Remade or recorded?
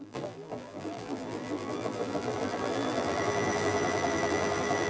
remade